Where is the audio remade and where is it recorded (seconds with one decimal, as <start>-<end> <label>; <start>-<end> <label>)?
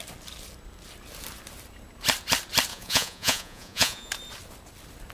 0.0-2.7 recorded; 2.7-4.1 remade; 4.1-5.1 recorded